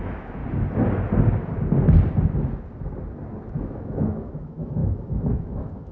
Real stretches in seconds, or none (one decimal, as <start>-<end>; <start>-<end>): 0.4-3.5